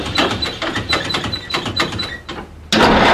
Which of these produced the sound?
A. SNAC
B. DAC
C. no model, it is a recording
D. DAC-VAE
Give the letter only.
C